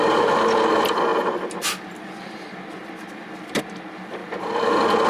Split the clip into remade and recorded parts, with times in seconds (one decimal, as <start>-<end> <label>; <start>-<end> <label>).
0.0-5.1 recorded